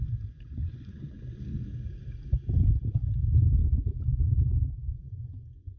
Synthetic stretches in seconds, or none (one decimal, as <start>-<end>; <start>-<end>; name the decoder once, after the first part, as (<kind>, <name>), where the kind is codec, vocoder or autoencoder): 0.6-1.4 (vocoder, Vocos); 3.6-5.8